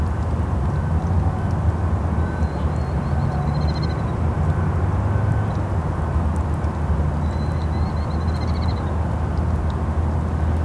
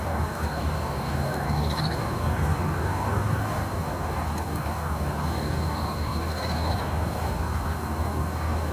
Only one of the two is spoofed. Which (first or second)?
second